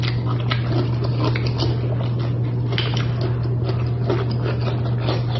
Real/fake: real